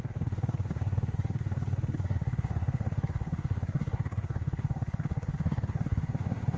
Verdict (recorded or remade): remade